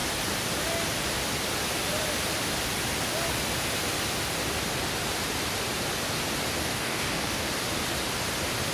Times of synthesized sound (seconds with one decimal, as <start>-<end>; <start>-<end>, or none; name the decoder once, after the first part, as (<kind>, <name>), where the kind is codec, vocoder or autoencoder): 6.6-7.5 (codec, DAC)